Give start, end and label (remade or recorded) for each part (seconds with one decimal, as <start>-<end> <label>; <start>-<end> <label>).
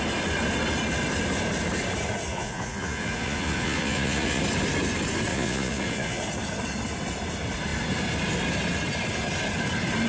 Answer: 0.0-2.3 recorded; 2.3-4.4 remade; 4.4-5.3 recorded; 5.3-6.2 remade; 6.2-10.1 recorded